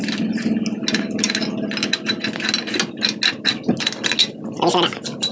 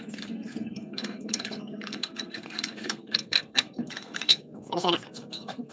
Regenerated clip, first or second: second